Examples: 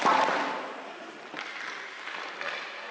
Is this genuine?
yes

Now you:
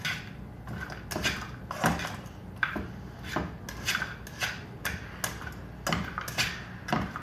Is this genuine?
yes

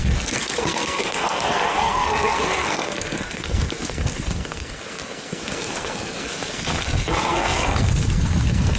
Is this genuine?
no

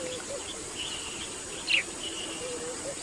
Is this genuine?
yes